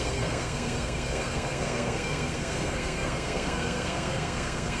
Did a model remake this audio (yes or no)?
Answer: yes